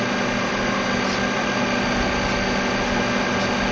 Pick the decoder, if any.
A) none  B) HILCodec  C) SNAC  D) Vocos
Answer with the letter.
A